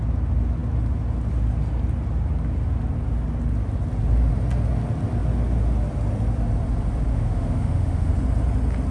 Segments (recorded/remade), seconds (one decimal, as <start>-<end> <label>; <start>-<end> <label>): 0.0-7.1 recorded; 7.1-8.1 remade; 8.1-8.9 recorded